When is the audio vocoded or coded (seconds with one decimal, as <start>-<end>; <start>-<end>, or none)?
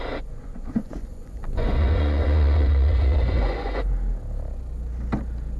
0.4-3.8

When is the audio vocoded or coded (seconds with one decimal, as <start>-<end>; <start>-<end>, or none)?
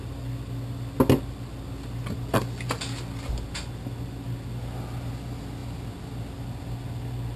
none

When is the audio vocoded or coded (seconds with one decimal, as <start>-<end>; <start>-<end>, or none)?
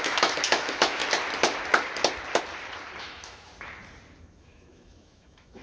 0.0-1.0; 3.0-3.5; 4.2-5.6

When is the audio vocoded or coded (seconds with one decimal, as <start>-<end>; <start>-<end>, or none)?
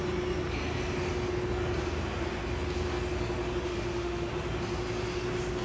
3.7-4.3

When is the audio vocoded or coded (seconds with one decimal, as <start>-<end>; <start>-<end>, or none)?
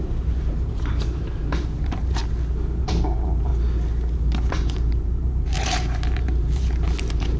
0.0-2.2; 2.8-3.5; 4.5-7.4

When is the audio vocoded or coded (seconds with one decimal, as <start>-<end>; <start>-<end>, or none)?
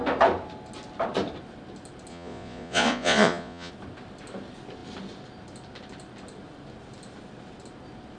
2.1-3.7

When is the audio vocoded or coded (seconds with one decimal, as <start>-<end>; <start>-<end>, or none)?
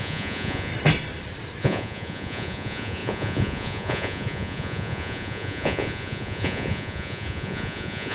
0.0-0.7; 1.6-8.1